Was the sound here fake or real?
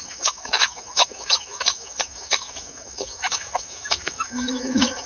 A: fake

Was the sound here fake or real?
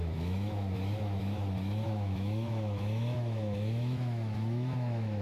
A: fake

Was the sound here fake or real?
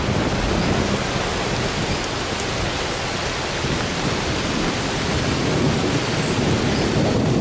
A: real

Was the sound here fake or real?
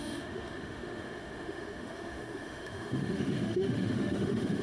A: fake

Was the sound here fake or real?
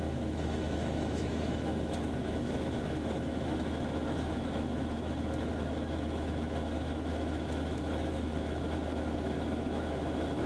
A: fake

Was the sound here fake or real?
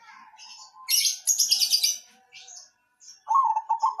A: real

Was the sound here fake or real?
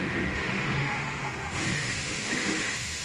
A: fake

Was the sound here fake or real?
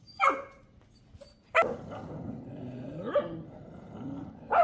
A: real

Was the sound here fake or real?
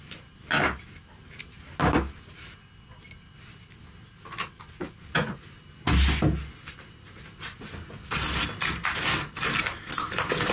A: real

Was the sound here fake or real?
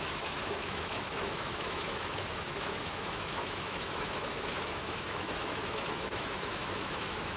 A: fake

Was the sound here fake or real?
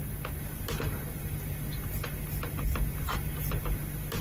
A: real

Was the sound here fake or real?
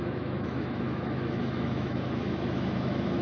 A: fake